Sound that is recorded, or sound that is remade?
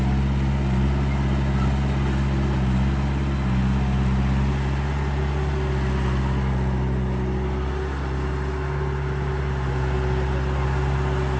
recorded